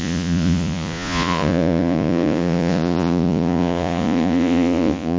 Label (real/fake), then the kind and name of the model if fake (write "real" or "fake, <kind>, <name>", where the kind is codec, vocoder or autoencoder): fake, vocoder, Vocos